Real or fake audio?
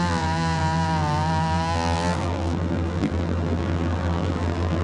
fake